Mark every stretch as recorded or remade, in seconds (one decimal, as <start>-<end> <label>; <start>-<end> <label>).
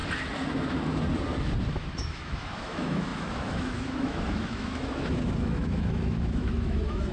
0.0-1.7 recorded; 1.7-7.1 remade